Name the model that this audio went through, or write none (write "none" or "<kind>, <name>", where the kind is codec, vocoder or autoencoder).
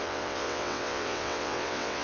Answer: vocoder, WaveNeXt